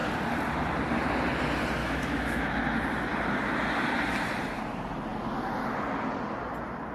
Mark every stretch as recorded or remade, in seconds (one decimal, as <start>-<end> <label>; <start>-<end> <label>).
0.0-1.8 recorded; 1.8-2.6 remade; 2.6-6.9 recorded